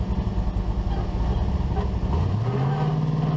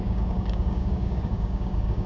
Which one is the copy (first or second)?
second